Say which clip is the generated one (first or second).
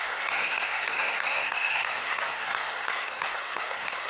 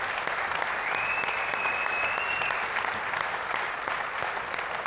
first